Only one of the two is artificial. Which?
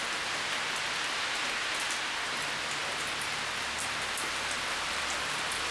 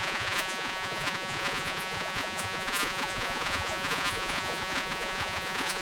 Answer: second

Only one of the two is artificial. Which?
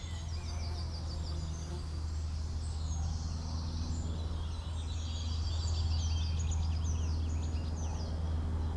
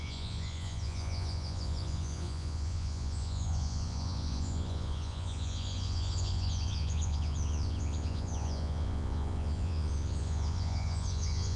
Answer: second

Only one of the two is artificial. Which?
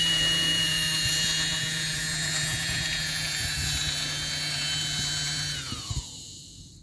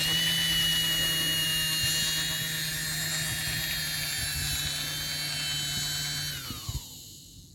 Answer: first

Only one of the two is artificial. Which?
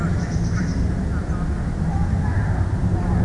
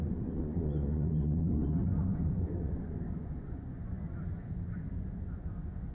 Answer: second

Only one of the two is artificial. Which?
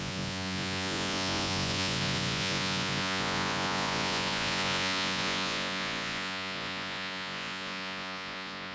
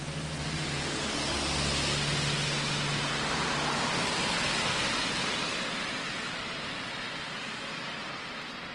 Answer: first